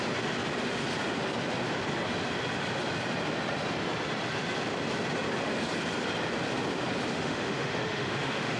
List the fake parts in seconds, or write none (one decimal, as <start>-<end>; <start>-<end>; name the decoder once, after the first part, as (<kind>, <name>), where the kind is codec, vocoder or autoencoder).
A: 7.1-8.6 (autoencoder, DAC-VAE)